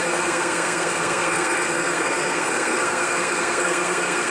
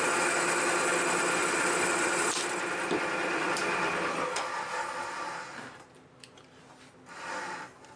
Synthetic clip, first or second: first